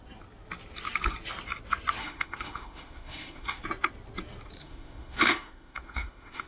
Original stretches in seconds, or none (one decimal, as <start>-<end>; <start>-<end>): 0.0-2.0; 3.6-4.6